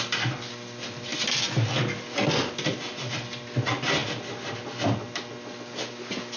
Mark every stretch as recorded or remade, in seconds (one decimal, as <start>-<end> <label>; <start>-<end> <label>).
0.0-6.4 recorded